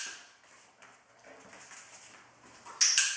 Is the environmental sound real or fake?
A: real